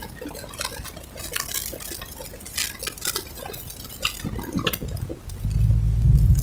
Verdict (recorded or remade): recorded